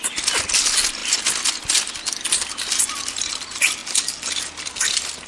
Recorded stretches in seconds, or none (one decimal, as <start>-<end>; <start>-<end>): 0.0-5.3